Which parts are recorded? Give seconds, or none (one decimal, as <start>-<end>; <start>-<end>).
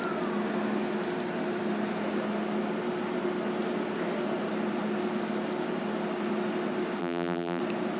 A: 0.0-7.0; 7.6-8.0